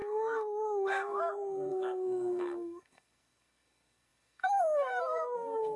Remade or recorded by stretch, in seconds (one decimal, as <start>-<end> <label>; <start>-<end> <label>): 0.0-5.8 remade